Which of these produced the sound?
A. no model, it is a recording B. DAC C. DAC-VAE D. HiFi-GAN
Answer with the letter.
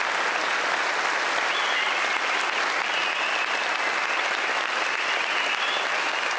A